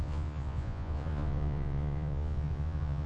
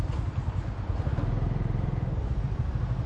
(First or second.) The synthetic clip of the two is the first